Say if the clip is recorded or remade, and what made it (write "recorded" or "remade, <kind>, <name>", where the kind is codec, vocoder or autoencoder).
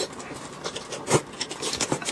recorded